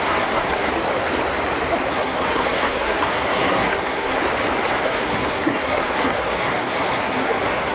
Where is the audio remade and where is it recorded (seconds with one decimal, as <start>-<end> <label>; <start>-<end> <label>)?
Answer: 0.0-0.7 remade; 0.7-1.9 recorded; 1.9-4.2 remade; 4.2-4.7 recorded; 4.7-7.7 remade